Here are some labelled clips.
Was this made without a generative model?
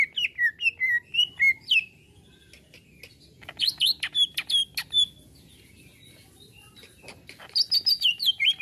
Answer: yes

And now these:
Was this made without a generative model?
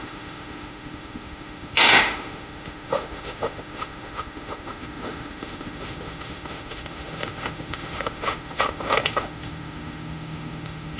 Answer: no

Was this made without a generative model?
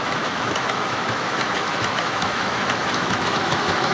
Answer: no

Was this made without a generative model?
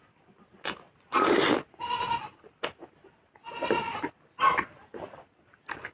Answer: yes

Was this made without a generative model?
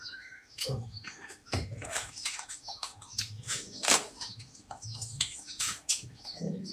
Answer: no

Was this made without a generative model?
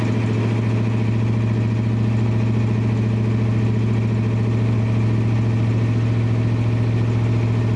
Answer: yes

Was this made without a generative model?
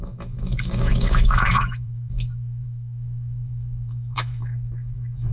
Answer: no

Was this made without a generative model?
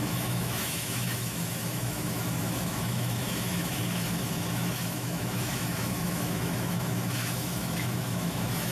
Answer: no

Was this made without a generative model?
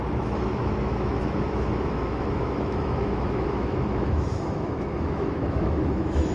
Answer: no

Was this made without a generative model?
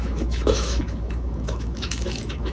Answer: no